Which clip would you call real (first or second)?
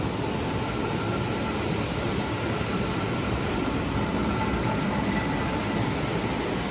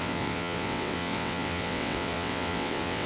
first